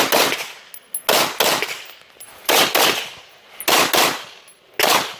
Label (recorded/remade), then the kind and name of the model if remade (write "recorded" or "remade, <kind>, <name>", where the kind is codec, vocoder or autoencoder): recorded